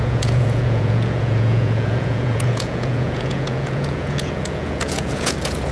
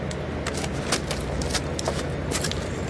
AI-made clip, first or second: first